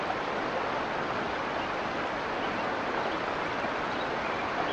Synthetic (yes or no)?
no